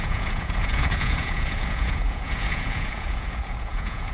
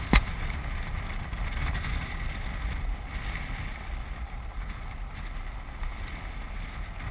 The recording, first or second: second